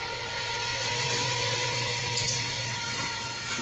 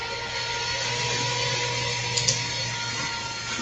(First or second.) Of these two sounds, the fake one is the first